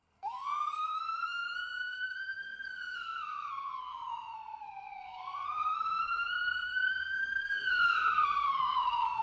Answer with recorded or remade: remade